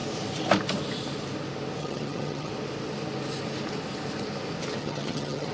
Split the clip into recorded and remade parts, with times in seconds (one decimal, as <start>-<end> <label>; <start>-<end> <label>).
0.0-1.8 recorded; 1.8-2.5 remade; 2.5-4.8 recorded; 4.8-5.5 remade